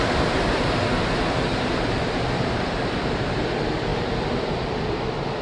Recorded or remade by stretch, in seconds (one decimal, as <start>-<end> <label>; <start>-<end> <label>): 0.0-1.5 recorded; 1.5-3.2 remade; 3.2-3.9 recorded; 3.9-4.4 remade; 4.4-5.4 recorded